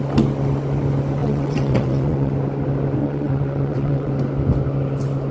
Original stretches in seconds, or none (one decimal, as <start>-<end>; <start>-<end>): 0.0-1.2; 2.3-3.0; 4.1-5.3